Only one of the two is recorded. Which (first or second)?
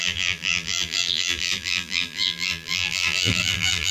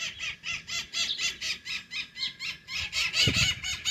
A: second